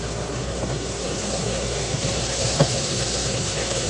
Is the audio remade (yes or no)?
yes